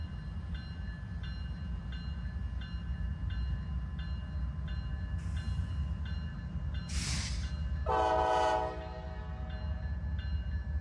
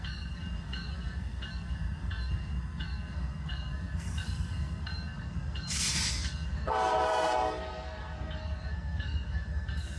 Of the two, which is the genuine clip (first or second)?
first